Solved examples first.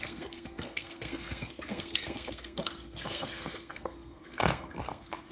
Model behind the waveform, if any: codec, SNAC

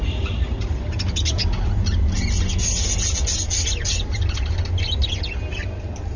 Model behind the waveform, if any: none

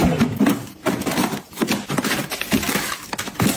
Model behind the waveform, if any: none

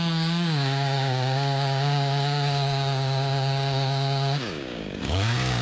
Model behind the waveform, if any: codec, DAC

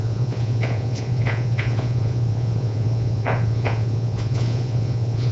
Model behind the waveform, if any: vocoder, Vocos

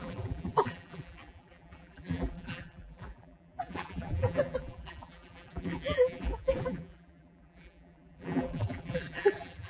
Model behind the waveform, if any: vocoder, BigVGAN v2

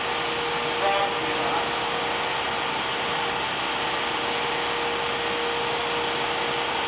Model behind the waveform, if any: none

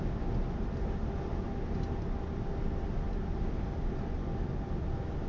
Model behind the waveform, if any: none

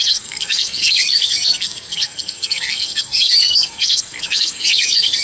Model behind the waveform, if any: codec, SNAC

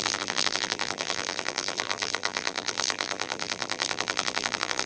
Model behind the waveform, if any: vocoder, BigVGAN v2